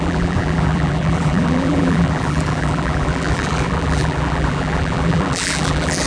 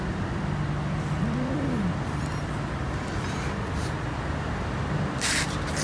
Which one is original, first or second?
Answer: second